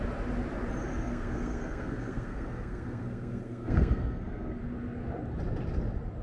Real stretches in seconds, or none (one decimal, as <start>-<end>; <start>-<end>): 0.0-0.9; 4.6-6.2